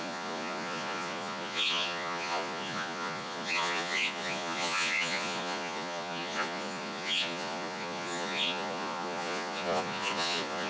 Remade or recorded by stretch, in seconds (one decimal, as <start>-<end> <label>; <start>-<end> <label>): 0.0-10.7 remade